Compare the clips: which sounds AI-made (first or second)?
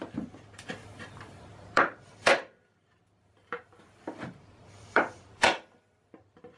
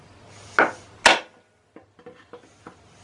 first